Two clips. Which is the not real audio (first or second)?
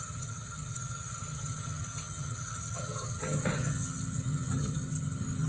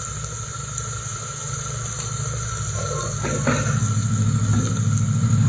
first